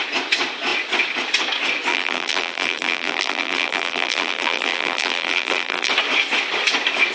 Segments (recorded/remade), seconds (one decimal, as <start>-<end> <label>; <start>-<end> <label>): 0.0-1.9 recorded; 1.9-5.9 remade; 5.9-7.1 recorded